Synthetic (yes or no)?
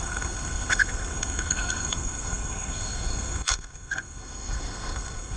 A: yes